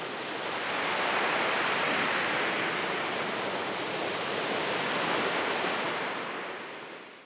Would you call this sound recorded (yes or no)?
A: yes